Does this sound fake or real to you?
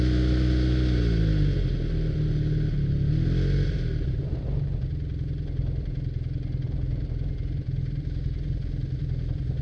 real